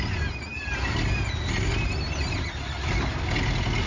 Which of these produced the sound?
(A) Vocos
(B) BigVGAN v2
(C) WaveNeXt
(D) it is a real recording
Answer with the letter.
D